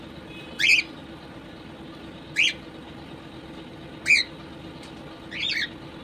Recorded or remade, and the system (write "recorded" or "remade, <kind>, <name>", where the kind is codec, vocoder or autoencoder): recorded